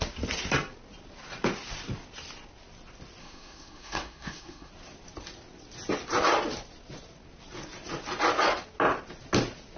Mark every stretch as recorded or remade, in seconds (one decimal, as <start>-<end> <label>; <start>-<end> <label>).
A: 0.0-3.2 recorded; 3.2-4.7 remade; 4.7-9.8 recorded

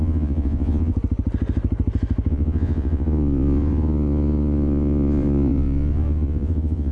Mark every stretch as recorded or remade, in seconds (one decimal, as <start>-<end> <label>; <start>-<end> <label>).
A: 0.0-0.9 remade; 0.9-2.3 recorded; 2.3-6.9 remade

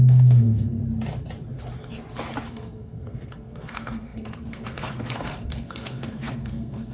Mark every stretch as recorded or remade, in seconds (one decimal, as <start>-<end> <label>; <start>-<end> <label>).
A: 0.0-0.8 remade; 0.8-2.5 recorded; 2.5-6.9 remade

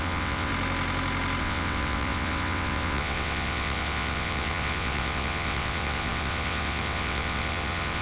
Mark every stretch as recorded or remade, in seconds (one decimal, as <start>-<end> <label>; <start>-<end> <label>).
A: 0.0-0.5 remade; 0.5-1.4 recorded; 1.4-8.0 remade

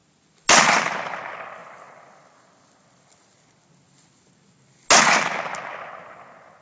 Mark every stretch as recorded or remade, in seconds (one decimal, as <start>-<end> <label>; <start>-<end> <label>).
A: 0.0-6.6 recorded

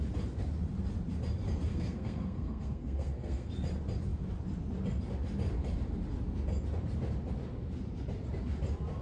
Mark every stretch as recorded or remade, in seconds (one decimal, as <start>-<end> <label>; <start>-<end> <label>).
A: 0.0-1.7 recorded; 1.7-3.5 remade; 3.5-9.0 recorded

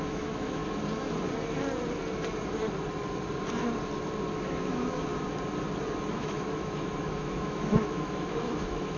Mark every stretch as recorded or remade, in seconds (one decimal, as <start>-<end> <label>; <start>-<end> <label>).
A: 0.0-0.6 remade; 0.6-4.3 recorded; 4.3-5.1 remade; 5.1-6.1 recorded; 6.1-9.0 remade

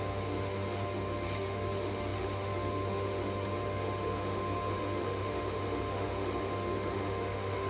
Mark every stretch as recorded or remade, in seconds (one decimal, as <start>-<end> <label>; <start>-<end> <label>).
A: 0.0-7.7 remade